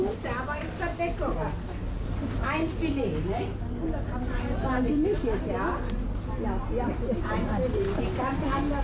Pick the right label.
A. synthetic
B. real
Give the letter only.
B